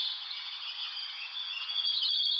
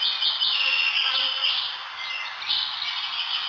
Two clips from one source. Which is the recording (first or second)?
second